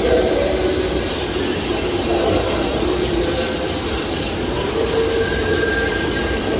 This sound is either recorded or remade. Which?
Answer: recorded